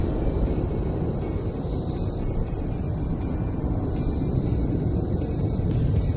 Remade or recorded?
remade